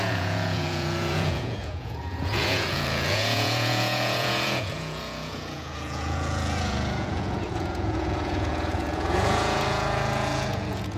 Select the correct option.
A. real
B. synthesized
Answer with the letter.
B